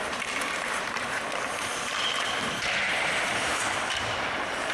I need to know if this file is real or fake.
fake